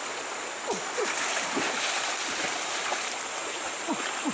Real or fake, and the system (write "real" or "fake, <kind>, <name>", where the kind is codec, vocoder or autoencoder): real